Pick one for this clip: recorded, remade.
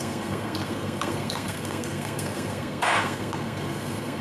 remade